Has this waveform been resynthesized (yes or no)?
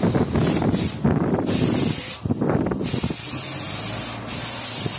no